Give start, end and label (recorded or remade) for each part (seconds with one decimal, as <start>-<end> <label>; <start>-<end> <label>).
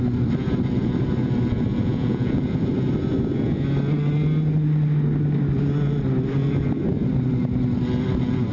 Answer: 0.0-1.8 recorded; 1.8-2.4 remade; 2.4-8.5 recorded